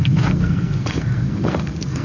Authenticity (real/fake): fake